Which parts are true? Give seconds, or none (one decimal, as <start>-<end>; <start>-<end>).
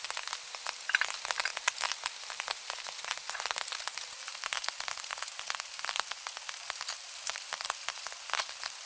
0.0-8.9